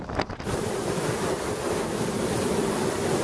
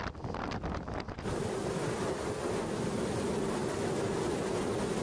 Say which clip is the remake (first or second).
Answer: first